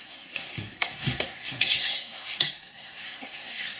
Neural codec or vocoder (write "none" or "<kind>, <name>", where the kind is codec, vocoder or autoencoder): codec, SNAC